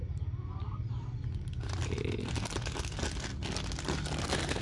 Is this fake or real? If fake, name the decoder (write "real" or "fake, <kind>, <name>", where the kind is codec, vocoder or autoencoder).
real